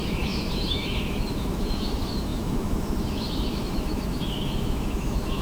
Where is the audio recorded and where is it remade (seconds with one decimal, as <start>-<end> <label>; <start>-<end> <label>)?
0.0-5.4 remade